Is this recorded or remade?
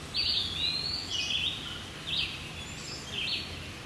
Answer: recorded